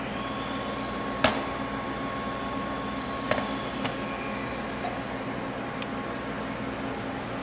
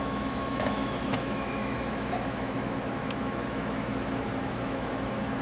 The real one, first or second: first